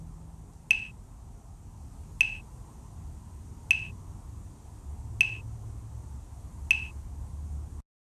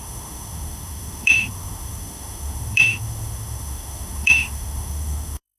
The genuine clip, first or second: first